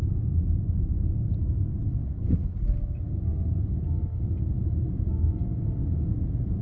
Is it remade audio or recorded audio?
recorded